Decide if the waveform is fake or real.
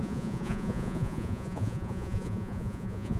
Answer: fake